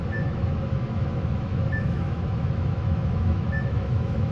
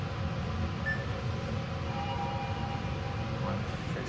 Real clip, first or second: second